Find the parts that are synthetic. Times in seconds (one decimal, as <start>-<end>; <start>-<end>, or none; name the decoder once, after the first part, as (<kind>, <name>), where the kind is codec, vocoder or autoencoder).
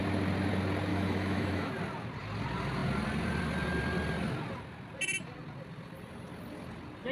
0.9-1.7 (autoencoder, DAC-VAE)